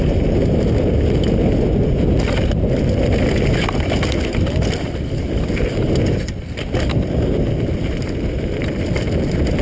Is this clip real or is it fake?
real